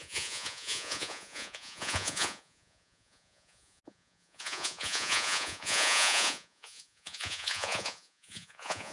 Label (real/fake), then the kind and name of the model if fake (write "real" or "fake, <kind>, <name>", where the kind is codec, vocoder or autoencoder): fake, vocoder, Vocos